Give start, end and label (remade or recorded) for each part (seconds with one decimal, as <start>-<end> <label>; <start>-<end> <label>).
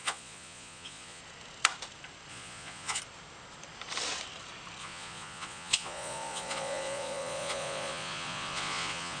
0.0-1.2 remade; 1.2-2.3 recorded; 2.3-3.0 remade; 3.0-4.8 recorded; 4.8-9.2 remade